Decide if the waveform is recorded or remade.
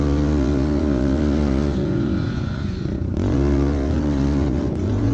remade